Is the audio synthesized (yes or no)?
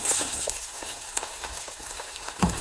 yes